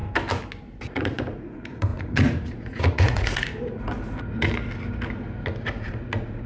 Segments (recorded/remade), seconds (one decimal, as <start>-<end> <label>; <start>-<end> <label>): 0.0-0.8 recorded; 0.8-3.5 remade; 3.5-5.6 recorded; 5.6-6.5 remade